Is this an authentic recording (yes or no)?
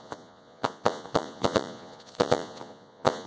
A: no